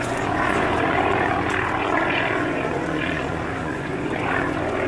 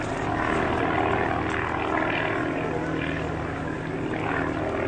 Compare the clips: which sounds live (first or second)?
second